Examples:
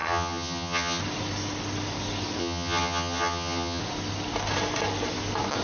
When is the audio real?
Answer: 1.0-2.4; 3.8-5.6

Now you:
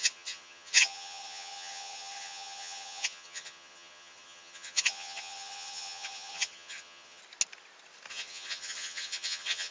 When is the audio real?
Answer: 7.2-8.1

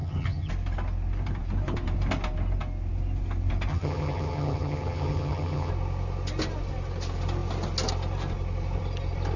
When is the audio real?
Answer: 0.5-3.7; 5.7-9.4

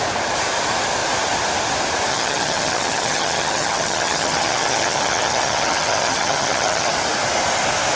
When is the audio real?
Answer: 0.0-2.1; 6.9-8.0

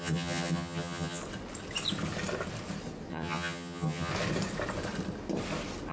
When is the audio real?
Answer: 1.2-3.1; 4.1-5.9

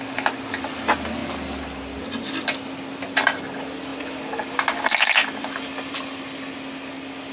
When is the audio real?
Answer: 0.0-7.3